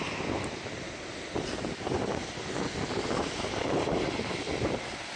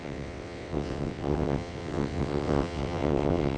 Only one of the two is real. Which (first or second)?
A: first